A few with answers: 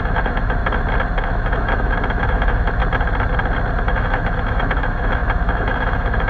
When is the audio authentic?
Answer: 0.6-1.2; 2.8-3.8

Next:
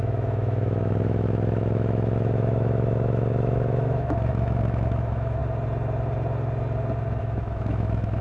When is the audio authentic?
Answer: 5.4-7.2

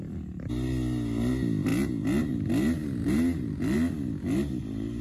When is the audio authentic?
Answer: 0.0-5.0